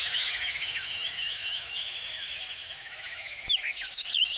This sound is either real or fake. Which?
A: fake